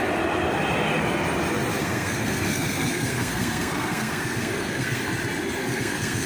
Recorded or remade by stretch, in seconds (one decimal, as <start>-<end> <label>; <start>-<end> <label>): 0.0-1.8 recorded; 1.8-5.0 remade; 5.0-5.6 recorded; 5.6-6.3 remade